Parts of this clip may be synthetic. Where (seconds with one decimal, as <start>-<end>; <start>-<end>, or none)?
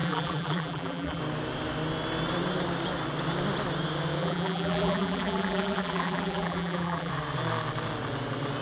0.0-1.2; 4.2-7.1